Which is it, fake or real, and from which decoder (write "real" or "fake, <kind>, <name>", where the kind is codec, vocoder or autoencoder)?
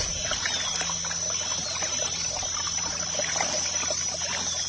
real